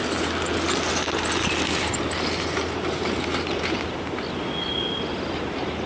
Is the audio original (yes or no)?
yes